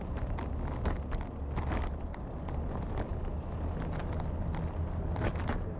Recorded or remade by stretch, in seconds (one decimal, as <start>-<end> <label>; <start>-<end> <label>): 0.0-5.8 recorded